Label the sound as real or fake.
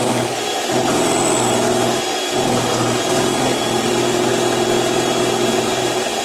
real